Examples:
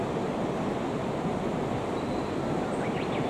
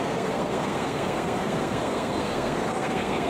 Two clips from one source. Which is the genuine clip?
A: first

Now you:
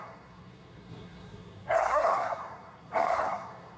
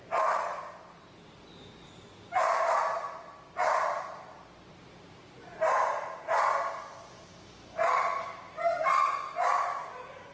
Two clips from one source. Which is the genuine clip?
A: second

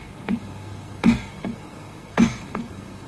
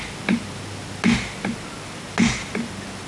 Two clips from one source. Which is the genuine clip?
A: second